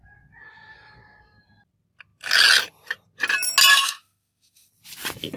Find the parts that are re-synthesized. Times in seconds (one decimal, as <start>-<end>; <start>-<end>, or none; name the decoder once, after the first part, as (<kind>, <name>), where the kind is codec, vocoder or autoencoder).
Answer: 3.7-4.7 (autoencoder, DAC-VAE)

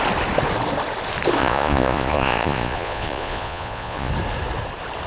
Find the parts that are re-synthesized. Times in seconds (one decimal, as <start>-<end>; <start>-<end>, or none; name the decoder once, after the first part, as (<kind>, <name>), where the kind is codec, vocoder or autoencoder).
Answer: 1.4-4.1 (vocoder, Vocos)

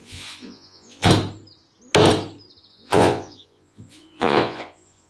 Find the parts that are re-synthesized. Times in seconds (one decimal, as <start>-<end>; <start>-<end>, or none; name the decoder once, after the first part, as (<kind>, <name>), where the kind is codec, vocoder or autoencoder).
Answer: 0.0-1.1 (vocoder, Vocos); 2.7-5.1

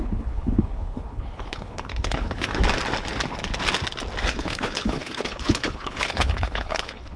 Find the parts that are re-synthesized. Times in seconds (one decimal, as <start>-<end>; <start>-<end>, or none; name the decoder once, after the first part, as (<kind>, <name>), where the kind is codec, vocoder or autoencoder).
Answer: 0.0-2.5 (codec, HILCodec); 4.3-7.2